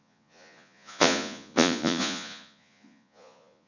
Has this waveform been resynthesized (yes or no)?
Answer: yes